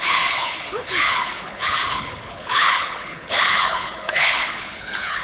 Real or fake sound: fake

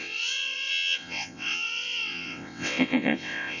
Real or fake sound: fake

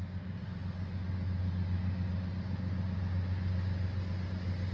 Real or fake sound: real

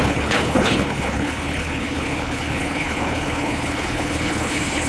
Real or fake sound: fake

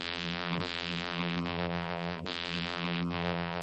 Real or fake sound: fake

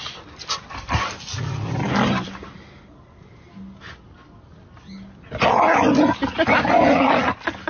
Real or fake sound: real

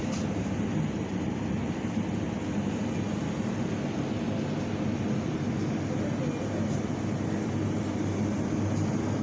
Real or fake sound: real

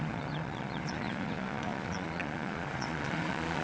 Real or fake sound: fake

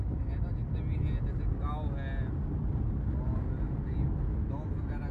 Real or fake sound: real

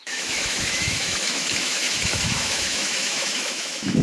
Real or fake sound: fake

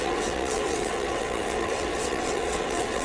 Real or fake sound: fake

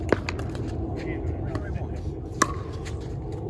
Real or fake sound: real